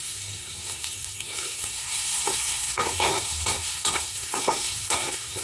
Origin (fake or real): fake